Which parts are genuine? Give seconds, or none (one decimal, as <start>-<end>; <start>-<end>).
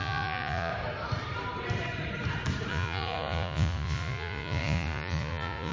0.7-2.7